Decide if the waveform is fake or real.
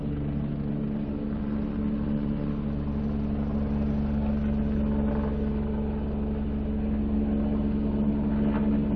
real